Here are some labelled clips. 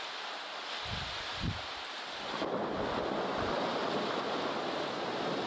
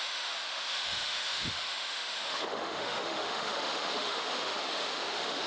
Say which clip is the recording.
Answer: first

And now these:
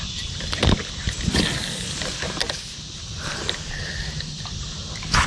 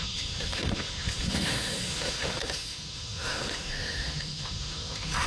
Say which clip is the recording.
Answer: first